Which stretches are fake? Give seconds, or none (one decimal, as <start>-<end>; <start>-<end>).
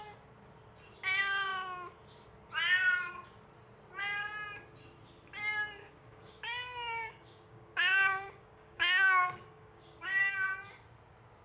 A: 5.8-10.5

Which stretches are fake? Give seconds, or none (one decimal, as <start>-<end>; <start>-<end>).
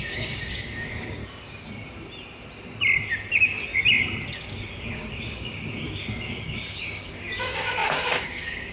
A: 0.0-1.2; 3.3-3.7; 4.3-8.7